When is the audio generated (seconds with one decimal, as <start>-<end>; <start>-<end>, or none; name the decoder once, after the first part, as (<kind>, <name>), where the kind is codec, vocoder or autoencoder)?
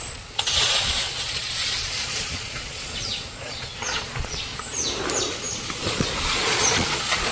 0.0-4.5 (vocoder, Vocos); 5.9-7.3